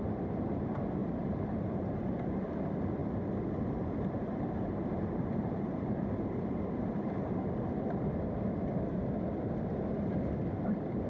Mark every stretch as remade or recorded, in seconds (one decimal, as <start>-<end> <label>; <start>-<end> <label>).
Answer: 0.0-1.0 recorded; 1.0-2.5 remade; 2.5-3.0 recorded; 3.0-7.3 remade; 7.3-11.1 recorded